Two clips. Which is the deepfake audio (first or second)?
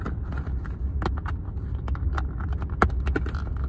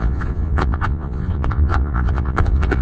second